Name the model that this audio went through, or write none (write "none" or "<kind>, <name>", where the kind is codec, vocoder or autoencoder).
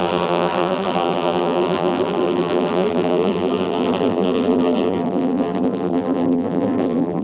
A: vocoder, BigVGAN v2